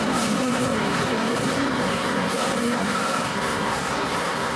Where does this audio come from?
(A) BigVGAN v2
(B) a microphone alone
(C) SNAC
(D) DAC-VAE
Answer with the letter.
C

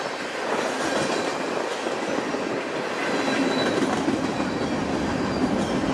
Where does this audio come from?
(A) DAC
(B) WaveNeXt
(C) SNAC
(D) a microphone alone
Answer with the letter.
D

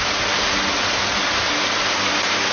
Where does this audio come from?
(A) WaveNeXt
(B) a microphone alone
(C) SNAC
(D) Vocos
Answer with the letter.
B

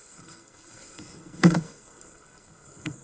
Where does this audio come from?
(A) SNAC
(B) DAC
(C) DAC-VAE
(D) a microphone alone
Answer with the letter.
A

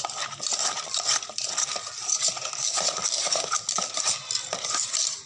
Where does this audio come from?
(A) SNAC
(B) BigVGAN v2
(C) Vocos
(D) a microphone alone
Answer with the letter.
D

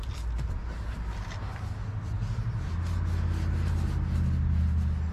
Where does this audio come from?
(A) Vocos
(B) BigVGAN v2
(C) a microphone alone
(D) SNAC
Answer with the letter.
C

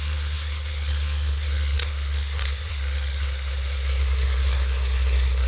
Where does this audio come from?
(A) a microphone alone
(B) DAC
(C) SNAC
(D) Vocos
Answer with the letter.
C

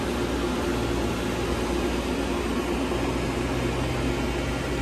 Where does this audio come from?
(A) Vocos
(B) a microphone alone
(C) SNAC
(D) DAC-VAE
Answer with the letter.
B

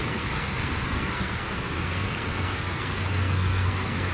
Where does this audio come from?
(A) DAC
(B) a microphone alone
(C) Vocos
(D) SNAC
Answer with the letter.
D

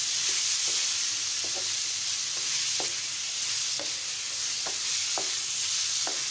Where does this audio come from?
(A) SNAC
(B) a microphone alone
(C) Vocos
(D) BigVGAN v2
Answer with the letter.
B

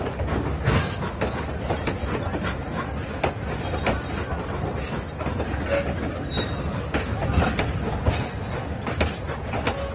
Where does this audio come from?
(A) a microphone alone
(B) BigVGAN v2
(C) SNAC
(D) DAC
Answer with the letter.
A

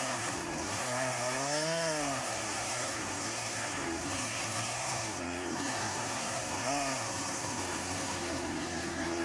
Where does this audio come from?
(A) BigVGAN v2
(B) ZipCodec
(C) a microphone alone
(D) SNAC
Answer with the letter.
D